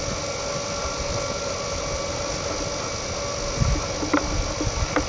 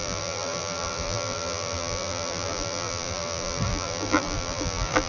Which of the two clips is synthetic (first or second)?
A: second